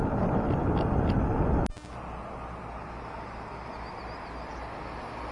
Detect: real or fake real